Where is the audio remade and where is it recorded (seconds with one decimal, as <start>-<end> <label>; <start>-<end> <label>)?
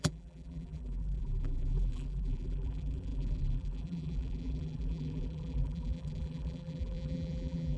0.0-7.8 remade